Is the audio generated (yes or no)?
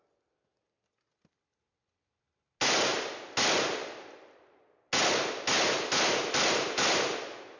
no